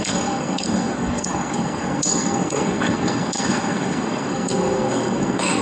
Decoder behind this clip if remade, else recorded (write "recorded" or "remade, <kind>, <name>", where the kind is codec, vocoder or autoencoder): remade, codec, SNAC